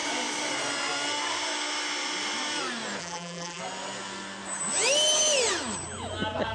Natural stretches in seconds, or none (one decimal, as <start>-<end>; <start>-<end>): 0.0-3.0; 3.6-6.5